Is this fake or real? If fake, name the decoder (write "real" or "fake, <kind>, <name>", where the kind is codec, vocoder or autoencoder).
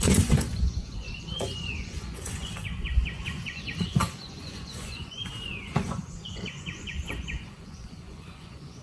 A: fake, vocoder, Vocos